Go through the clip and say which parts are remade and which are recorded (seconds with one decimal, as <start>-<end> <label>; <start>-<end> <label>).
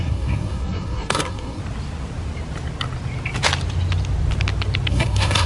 0.0-1.6 remade; 1.6-4.9 recorded; 4.9-5.5 remade